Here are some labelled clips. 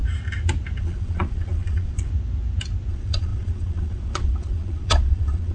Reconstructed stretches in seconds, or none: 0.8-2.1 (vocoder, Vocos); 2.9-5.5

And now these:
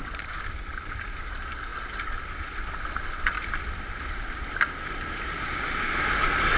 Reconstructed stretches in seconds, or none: none

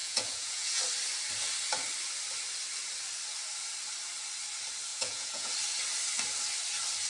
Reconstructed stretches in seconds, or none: 0.0-0.8 (vocoder, Vocos); 4.9-5.5

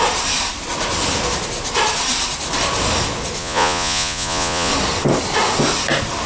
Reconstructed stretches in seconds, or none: 3.4-4.7 (vocoder, Vocos)